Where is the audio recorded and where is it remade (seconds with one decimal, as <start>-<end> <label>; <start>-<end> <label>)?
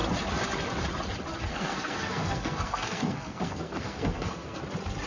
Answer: 0.0-1.5 recorded; 1.5-4.6 remade; 4.6-5.1 recorded